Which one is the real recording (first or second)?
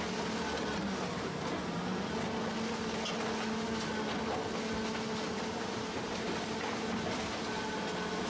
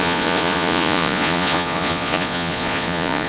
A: first